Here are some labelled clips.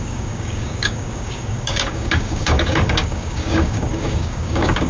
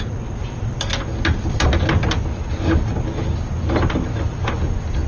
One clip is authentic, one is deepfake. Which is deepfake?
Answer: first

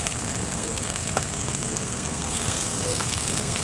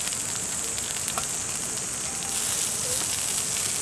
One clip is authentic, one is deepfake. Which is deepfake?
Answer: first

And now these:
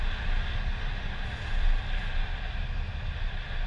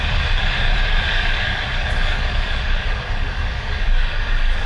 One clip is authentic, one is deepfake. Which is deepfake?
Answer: second